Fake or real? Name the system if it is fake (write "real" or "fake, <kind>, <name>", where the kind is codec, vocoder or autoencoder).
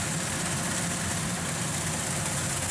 real